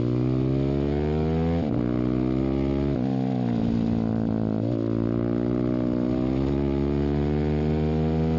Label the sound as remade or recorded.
recorded